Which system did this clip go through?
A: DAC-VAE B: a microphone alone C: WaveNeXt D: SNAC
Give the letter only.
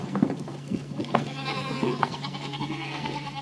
D